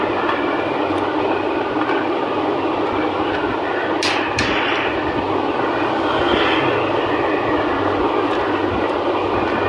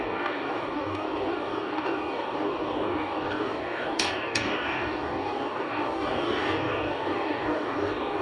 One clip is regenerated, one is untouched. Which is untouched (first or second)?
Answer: first